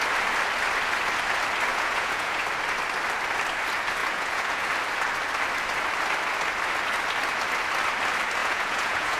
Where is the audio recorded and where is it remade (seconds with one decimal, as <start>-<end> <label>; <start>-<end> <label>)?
0.0-1.7 recorded; 1.7-2.4 remade; 2.4-4.0 recorded; 4.0-4.7 remade; 4.7-8.4 recorded; 8.4-9.2 remade

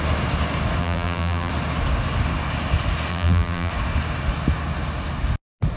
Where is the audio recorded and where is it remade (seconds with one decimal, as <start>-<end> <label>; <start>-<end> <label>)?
0.0-0.8 recorded; 0.8-1.5 remade; 1.5-3.1 recorded; 3.1-3.7 remade; 3.7-5.8 recorded